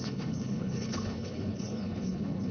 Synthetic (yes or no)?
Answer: yes